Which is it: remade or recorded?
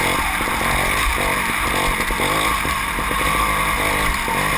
recorded